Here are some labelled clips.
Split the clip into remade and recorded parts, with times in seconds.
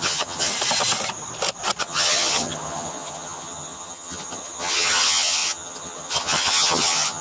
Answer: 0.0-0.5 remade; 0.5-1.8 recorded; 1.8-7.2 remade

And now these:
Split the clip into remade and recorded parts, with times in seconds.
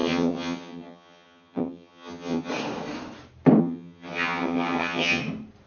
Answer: 0.0-2.5 remade; 2.5-3.6 recorded; 3.6-5.2 remade; 5.2-5.7 recorded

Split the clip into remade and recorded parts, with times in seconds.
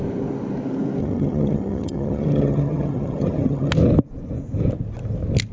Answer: 0.0-1.0 recorded; 1.0-3.7 remade; 3.7-5.5 recorded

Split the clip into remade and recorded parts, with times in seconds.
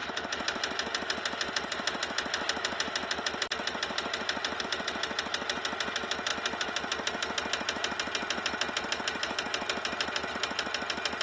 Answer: 0.0-11.2 recorded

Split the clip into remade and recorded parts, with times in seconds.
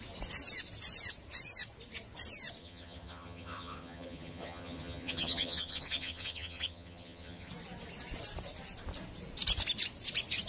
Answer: 0.0-2.6 recorded; 2.6-7.5 remade; 7.5-10.5 recorded